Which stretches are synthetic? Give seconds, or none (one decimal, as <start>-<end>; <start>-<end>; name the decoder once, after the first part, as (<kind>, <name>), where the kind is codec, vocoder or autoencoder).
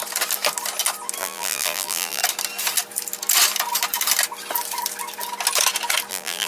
1.2-2.2 (vocoder, BigVGAN v2); 6.1-6.5